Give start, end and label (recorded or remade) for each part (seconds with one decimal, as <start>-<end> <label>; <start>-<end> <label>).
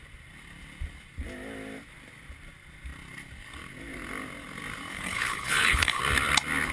0.0-4.9 recorded; 4.9-6.0 remade; 6.0-6.7 recorded